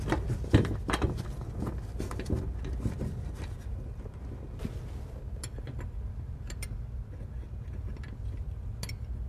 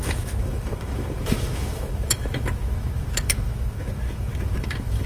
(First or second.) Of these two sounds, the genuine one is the first